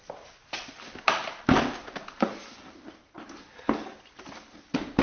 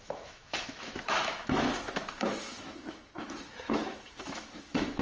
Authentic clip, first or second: first